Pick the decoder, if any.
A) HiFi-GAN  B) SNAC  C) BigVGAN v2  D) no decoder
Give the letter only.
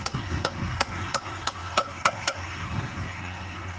B